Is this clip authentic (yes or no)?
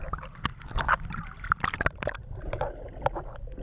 yes